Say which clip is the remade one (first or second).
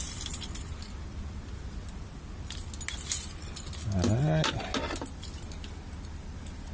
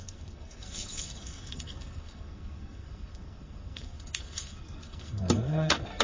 second